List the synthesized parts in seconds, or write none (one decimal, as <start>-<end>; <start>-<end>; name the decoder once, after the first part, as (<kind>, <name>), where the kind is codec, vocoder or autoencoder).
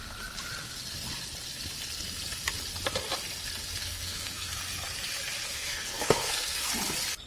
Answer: 3.8-4.5 (codec, SNAC); 5.5-6.7